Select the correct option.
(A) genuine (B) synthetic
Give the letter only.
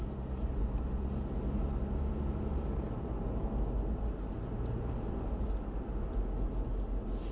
A